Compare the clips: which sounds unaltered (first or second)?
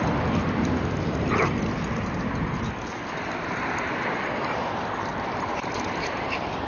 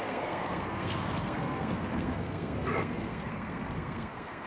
first